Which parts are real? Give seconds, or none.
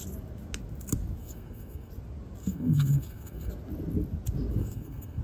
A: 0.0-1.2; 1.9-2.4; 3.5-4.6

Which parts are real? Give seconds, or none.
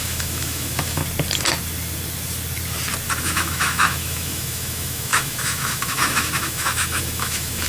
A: 1.0-3.2